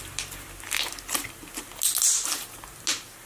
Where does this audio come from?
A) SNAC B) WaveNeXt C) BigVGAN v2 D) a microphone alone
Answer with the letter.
D